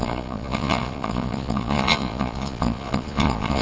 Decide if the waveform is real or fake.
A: fake